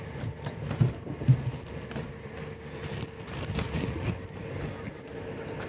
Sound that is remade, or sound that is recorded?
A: recorded